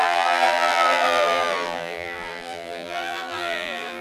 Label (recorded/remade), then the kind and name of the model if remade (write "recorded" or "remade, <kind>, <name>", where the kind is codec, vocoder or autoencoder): remade, vocoder, BigVGAN v2